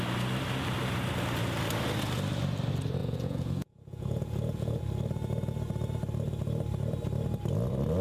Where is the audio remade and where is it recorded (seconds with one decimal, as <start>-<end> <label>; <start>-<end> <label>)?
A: 0.0-3.0 recorded; 3.0-4.8 remade; 4.8-8.0 recorded